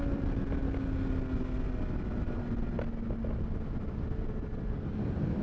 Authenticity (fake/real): real